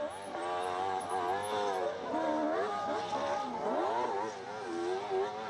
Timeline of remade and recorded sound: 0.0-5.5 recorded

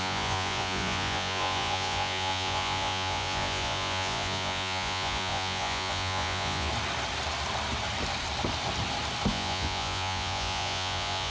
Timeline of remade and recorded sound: 0.0-6.7 remade; 6.7-9.3 recorded; 9.3-11.3 remade

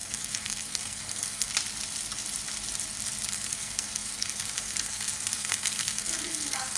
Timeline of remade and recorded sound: 0.0-1.5 remade; 1.5-3.3 recorded; 3.3-6.8 remade